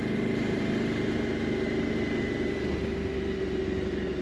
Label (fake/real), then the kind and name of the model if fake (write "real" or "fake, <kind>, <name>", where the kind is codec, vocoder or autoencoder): real